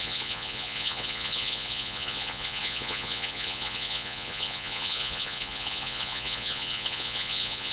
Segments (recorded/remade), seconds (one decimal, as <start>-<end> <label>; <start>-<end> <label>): 0.0-7.7 remade